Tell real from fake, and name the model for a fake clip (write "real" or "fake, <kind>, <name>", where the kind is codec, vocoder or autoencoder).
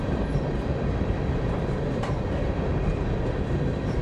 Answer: fake, vocoder, BigVGAN v2